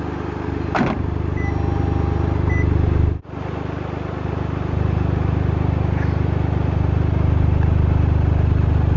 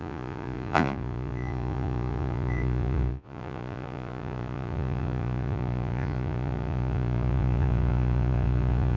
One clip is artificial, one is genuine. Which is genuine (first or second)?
first